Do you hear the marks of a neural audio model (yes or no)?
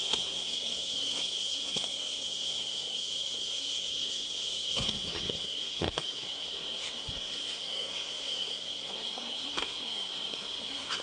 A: yes